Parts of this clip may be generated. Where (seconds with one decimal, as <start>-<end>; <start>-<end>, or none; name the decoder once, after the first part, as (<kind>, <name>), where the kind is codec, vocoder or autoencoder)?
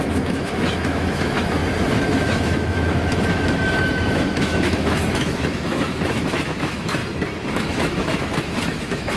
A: 0.0-1.6 (autoencoder, DAC-VAE); 2.2-7.0; 7.5-9.2